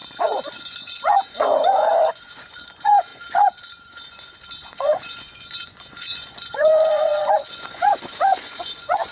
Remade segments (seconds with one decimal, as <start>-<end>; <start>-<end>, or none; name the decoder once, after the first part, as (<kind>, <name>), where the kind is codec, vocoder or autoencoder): 0.0-9.1 (vocoder, Vocos)